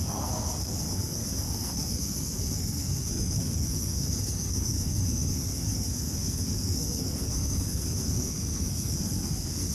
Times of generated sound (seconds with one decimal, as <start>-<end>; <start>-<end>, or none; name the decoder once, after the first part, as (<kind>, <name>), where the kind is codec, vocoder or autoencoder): 0.0-9.7 (codec, SNAC)